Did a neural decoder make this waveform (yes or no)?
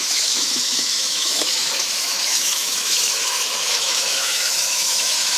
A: yes